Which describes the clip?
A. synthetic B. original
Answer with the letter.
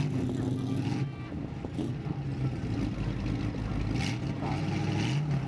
B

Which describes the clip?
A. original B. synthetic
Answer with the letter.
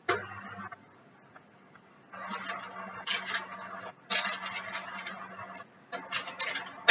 A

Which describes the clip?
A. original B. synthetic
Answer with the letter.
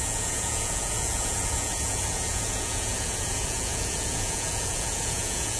B